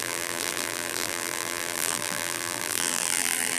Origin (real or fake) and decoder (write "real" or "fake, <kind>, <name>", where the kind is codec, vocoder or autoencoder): fake, vocoder, BigVGAN v2